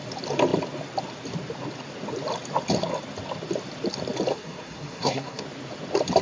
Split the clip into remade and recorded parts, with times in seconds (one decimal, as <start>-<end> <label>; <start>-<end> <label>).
0.0-4.3 recorded; 4.3-5.4 remade; 5.4-6.2 recorded